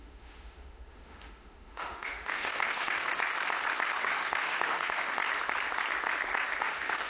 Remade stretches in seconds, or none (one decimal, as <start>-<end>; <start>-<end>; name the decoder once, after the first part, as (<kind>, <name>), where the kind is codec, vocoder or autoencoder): 0.0-3.1 (autoencoder, DAC-VAE); 4.0-5.2; 6.6-7.1